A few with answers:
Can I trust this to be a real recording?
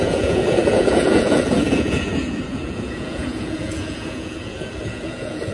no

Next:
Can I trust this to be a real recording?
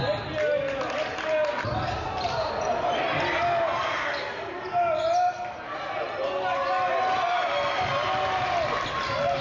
yes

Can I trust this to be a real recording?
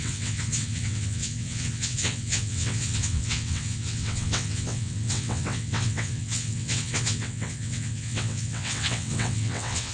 no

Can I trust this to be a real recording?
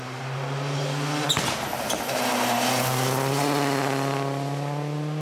yes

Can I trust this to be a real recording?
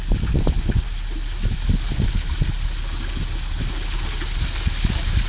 yes